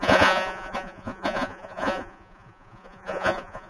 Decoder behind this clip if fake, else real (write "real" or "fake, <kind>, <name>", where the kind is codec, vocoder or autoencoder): fake, vocoder, Vocos